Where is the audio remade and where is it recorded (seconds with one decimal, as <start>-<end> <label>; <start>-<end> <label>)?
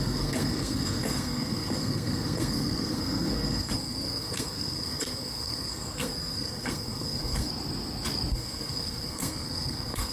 0.0-7.5 remade; 7.5-8.3 recorded; 8.3-10.1 remade